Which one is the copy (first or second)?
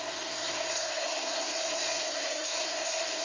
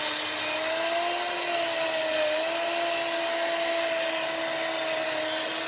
first